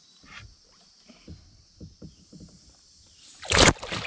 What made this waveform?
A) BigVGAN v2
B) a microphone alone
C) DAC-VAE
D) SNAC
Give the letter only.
B